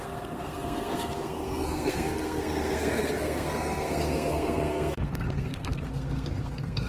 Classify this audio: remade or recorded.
remade